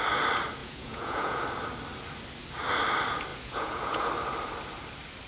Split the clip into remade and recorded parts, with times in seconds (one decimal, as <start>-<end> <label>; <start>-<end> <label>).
0.0-0.6 recorded; 0.6-1.4 remade; 1.4-3.3 recorded; 3.3-4.1 remade; 4.1-5.3 recorded